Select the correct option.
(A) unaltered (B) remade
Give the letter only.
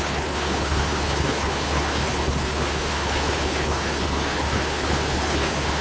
B